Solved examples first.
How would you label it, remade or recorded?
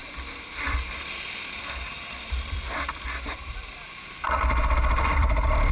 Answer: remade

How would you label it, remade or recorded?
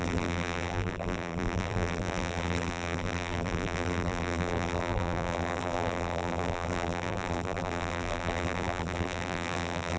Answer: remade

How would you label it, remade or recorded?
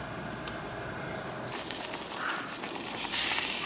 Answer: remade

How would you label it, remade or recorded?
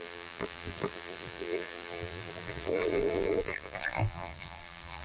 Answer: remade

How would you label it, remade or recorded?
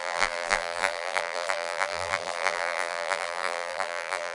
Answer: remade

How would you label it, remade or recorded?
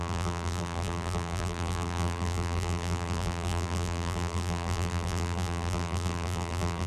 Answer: remade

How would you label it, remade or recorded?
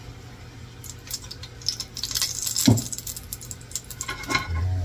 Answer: recorded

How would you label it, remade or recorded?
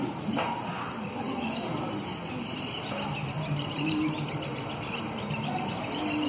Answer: recorded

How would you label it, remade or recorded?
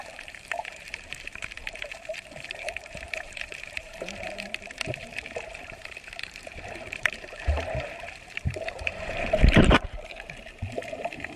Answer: remade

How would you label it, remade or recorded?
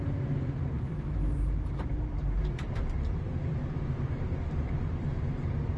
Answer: remade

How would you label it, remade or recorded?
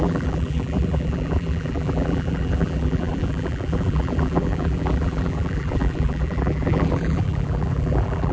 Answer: remade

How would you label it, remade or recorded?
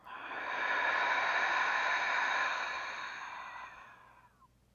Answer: recorded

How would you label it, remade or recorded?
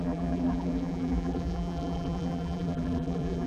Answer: remade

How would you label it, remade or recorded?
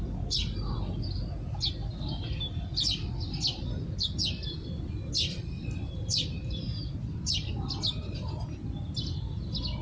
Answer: recorded